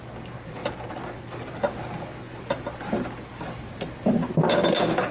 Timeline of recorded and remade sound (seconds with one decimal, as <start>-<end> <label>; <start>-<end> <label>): 0.0-5.1 recorded